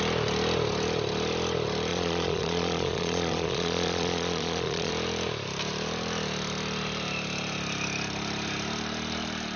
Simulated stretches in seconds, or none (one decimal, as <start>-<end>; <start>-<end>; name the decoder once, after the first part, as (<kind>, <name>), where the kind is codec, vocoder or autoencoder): 1.9-4.9 (vocoder, Vocos)